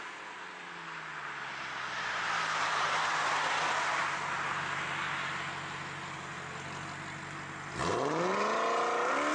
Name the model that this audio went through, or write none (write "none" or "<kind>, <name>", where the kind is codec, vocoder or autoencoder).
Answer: none